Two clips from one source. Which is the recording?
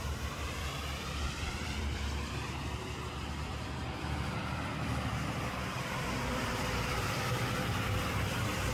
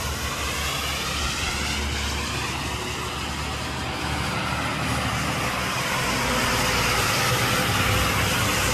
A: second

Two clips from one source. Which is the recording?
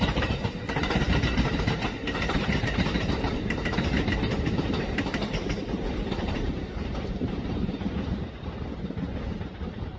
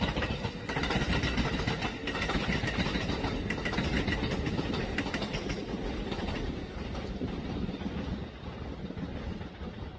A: second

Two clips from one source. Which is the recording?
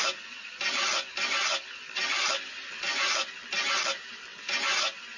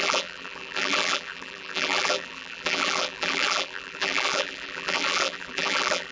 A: first